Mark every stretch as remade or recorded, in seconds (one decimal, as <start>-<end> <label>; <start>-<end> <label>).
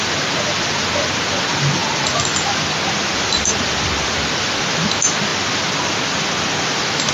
0.0-7.1 recorded